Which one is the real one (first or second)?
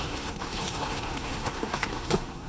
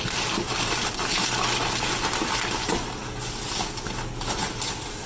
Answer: second